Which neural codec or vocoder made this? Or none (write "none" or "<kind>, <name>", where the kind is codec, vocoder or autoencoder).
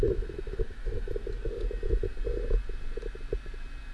none